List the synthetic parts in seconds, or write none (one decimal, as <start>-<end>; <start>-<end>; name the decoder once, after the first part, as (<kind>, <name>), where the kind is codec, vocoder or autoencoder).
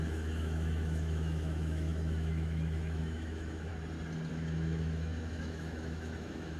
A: 0.0-3.7 (autoencoder, DAC-VAE); 4.3-6.6